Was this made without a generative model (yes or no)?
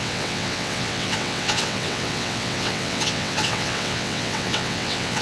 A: no